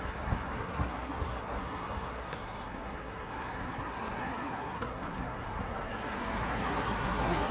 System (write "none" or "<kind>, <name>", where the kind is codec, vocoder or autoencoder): codec, SNAC